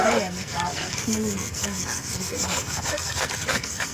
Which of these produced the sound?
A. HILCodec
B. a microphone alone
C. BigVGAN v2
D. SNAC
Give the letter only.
D